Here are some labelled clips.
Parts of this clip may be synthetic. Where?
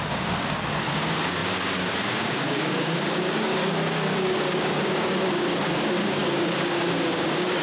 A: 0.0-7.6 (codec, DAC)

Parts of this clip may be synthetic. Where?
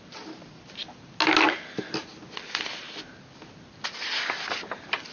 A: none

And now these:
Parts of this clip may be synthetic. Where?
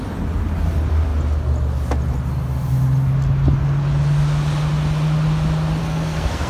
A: 5.8-6.5 (codec, SNAC)